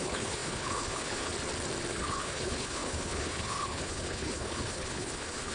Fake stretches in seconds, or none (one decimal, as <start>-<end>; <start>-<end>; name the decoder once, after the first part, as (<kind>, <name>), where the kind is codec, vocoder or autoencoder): 0.0-1.3 (codec, HILCodec); 1.9-5.5